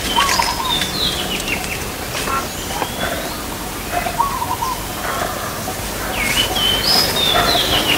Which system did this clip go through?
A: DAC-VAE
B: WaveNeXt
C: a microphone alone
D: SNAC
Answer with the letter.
C